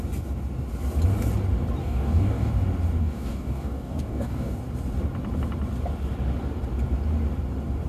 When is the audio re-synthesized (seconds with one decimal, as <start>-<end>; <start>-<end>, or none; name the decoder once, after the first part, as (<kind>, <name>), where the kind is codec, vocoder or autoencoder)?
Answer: 1.8-2.5 (codec, DAC); 3.0-4.6